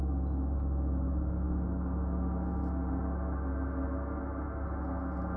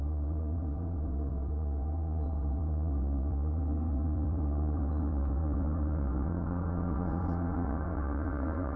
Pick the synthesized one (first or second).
second